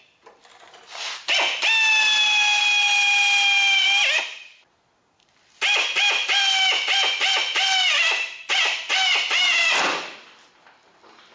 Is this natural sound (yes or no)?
yes